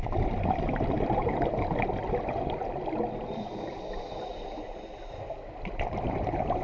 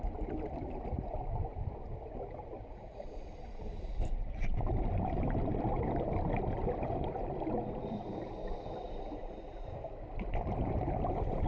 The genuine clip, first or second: first